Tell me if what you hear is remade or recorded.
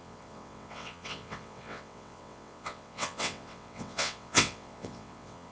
remade